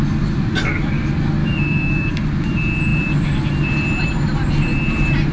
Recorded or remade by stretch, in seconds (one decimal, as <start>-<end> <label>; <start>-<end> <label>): 0.0-1.4 recorded; 1.4-2.1 remade; 2.1-5.3 recorded